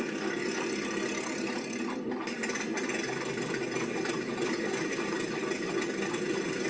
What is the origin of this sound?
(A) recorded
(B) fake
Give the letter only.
A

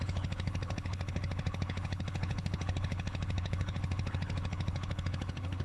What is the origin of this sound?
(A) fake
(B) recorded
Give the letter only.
A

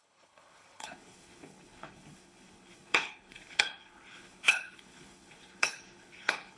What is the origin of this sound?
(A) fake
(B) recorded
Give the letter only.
A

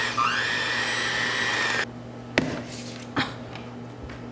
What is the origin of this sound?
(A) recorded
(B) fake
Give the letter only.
A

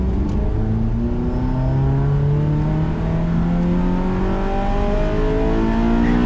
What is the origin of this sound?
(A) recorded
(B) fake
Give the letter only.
A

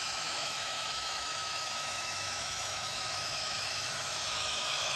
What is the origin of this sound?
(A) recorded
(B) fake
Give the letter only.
B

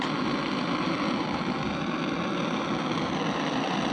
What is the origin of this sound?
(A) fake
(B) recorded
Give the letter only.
B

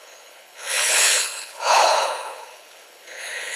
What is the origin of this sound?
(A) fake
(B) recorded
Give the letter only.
A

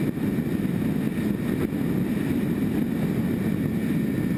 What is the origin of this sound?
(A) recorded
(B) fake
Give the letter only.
A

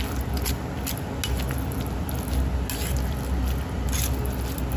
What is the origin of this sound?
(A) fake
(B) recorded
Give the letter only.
B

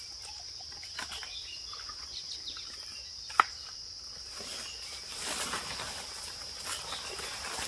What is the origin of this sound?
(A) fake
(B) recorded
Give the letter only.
B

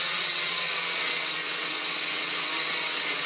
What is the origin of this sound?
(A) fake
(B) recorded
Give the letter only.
A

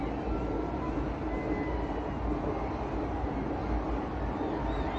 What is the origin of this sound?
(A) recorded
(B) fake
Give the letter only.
A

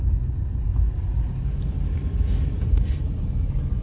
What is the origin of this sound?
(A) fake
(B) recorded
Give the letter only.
B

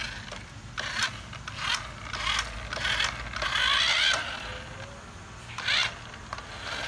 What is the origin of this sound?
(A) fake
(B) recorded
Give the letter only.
B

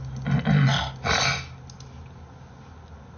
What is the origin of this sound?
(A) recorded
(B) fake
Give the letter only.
A